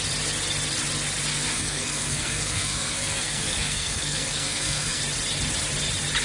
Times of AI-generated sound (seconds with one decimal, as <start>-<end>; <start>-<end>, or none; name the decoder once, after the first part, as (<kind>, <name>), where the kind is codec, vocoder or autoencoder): 1.3-5.0 (codec, SNAC)

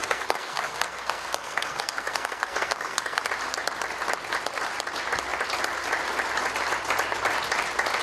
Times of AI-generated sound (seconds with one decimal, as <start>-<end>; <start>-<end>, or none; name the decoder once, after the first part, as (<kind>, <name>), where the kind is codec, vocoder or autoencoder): 0.0-3.2 (codec, SNAC)

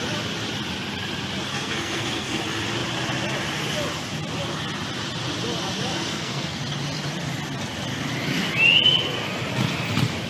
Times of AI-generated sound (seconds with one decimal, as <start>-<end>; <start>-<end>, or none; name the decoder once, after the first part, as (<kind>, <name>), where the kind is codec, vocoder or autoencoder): 1.5-2.4 (codec, SNAC); 5.9-6.6